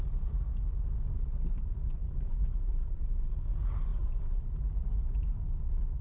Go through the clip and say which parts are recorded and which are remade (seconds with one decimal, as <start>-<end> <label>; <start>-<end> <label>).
0.0-2.0 recorded; 2.0-3.5 remade; 3.5-3.9 recorded; 3.9-4.8 remade; 4.8-6.0 recorded